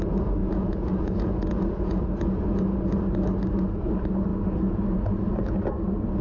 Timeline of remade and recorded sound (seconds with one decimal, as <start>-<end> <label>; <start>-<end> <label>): 0.0-0.4 recorded; 0.4-2.0 remade; 2.0-6.2 recorded